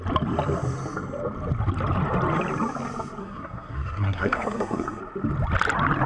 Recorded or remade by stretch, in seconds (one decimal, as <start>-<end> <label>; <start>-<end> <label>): 0.0-3.2 recorded; 3.2-5.0 remade; 5.0-6.1 recorded